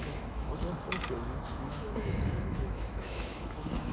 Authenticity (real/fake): fake